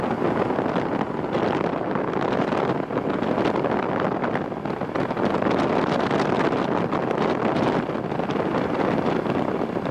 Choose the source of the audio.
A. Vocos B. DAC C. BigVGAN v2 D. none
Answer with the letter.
D